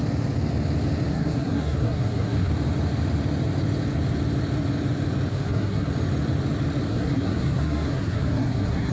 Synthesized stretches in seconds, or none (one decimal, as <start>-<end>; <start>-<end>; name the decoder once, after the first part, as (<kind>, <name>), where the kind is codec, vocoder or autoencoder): 1.1-2.5 (codec, SNAC); 5.3-5.9; 6.9-8.9